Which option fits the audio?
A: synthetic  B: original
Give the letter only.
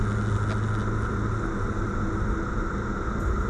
B